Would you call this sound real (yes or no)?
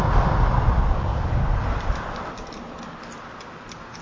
yes